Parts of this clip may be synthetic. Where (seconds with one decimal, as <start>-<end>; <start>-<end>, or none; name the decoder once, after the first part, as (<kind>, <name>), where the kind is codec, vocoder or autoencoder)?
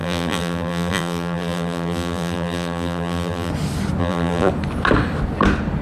0.0-3.5 (vocoder, BigVGAN v2); 4.0-4.5